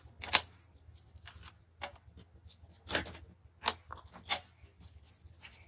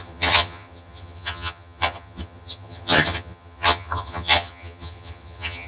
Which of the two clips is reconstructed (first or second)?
second